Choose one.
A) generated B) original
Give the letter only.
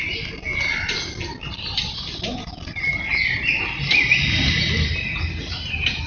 B